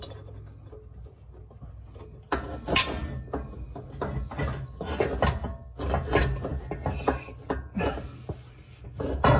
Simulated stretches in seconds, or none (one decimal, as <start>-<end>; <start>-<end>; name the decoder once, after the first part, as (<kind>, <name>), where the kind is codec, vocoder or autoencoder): none